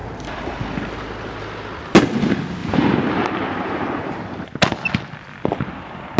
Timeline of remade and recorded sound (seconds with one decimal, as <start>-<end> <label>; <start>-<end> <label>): 0.0-0.6 remade; 0.6-2.6 recorded; 2.6-4.5 remade; 4.5-6.2 recorded